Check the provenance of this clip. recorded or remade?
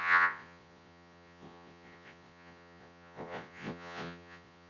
remade